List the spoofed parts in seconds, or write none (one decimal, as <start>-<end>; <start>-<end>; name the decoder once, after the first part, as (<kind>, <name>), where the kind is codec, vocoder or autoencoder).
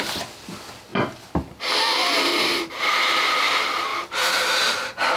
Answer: 0.9-1.6 (vocoder, BigVGAN v2); 2.3-2.9; 3.9-5.2